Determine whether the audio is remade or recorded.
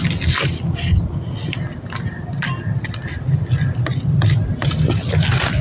recorded